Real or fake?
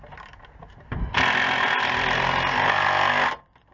real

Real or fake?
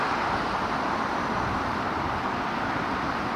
real